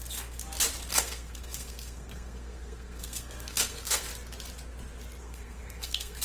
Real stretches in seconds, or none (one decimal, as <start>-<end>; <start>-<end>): 0.4-1.0; 4.1-5.2